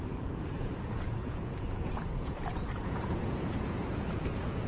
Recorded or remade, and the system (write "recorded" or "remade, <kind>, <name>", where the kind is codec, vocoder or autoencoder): remade, vocoder, Vocos